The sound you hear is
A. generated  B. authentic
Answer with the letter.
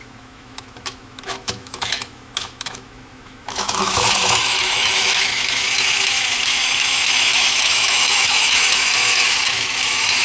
A